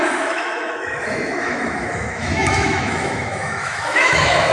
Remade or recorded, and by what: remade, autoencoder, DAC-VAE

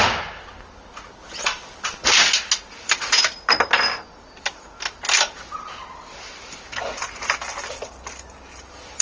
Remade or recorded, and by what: recorded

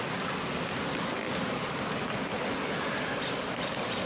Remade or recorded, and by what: recorded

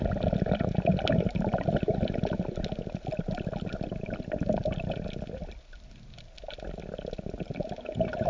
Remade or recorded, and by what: recorded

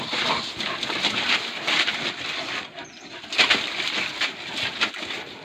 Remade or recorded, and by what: recorded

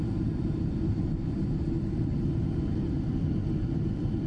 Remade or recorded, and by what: recorded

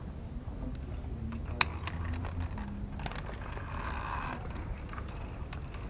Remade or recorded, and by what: recorded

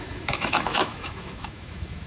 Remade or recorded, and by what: remade, autoencoder, DAC-VAE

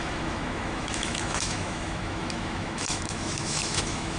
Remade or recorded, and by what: remade, autoencoder, DAC-VAE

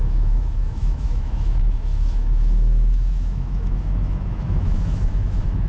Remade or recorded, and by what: remade, autoencoder, DAC-VAE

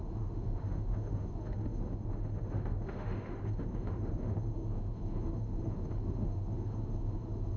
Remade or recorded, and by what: remade, autoencoder, DAC-VAE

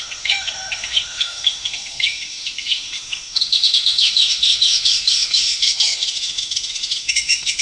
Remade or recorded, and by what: remade, autoencoder, DAC-VAE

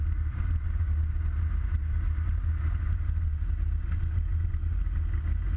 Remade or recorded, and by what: recorded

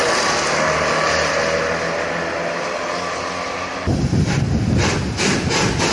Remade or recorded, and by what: recorded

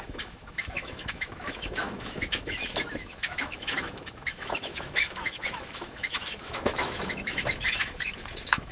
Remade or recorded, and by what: remade, autoencoder, DAC-VAE